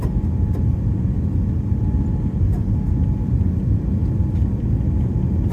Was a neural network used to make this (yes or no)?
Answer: no